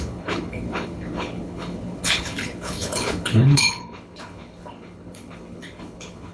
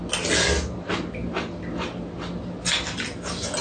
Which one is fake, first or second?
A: first